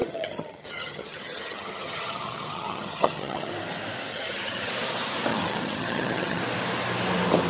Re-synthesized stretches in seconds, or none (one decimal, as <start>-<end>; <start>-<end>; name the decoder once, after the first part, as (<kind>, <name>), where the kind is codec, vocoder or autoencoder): 0.0-3.5 (vocoder, HiFi-GAN); 4.1-4.7; 5.3-6.4